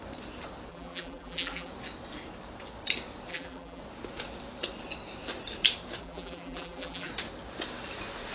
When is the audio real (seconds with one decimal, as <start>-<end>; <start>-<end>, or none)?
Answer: 0.0-0.7; 1.7-3.3; 3.8-6.0; 7.1-8.3